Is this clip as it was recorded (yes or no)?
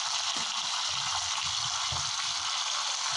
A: yes